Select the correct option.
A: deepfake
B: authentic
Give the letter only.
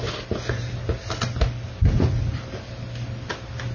B